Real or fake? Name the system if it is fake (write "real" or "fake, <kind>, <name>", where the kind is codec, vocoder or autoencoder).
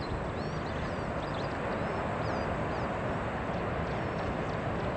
real